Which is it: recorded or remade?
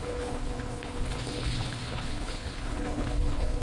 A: remade